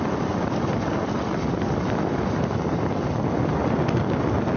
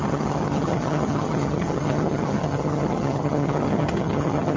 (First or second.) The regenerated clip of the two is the second